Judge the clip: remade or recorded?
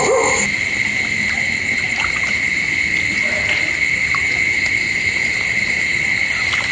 recorded